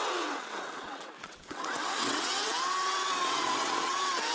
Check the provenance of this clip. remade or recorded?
remade